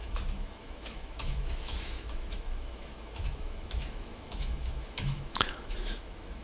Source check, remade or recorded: remade